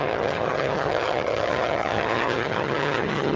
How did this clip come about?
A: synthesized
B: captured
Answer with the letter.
A